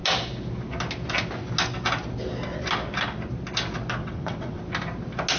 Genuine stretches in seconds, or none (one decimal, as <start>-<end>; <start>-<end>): 0.0-4.0; 4.6-5.4